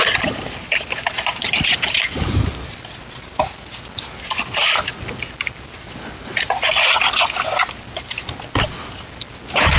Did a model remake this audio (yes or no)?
no